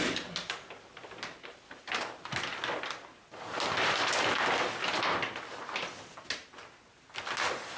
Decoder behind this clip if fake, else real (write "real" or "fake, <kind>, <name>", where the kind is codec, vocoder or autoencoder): real